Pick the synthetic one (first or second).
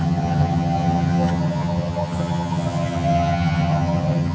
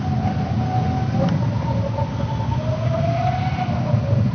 first